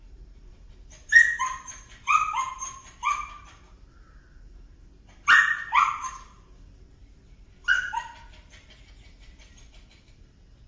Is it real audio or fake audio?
fake